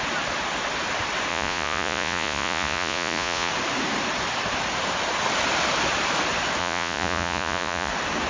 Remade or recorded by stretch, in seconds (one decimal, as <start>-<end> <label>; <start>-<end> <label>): 0.0-1.3 recorded; 1.3-3.5 remade; 3.5-6.6 recorded; 6.6-7.9 remade; 7.9-8.3 recorded